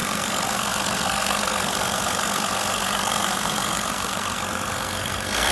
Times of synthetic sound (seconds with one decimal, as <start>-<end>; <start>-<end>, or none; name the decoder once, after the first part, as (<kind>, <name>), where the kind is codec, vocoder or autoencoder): 0.0-5.5 (codec, SNAC)